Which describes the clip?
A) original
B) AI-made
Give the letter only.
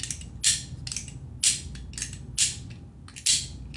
A